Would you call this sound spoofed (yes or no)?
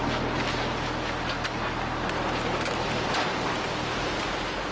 no